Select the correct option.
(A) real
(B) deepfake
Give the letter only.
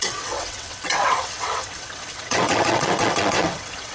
B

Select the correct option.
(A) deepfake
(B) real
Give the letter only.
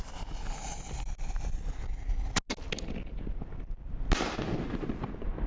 B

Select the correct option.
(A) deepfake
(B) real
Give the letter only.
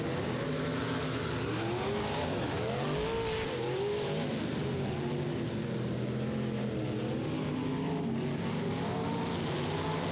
B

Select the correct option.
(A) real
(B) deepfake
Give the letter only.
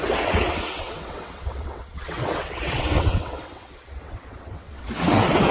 B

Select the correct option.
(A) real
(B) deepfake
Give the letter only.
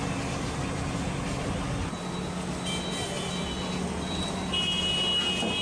A